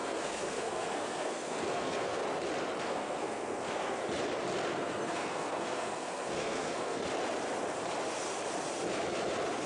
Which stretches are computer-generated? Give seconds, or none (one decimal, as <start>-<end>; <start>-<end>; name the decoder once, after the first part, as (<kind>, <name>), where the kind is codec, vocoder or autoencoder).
0.0-2.2 (codec, SNAC); 2.8-4.0; 4.7-7.0